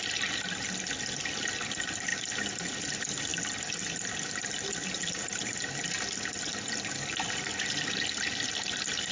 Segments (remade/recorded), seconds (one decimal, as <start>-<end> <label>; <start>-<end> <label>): 0.0-9.1 recorded